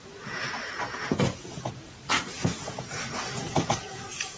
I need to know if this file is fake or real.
fake